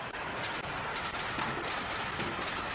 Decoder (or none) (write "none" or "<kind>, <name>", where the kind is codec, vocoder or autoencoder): none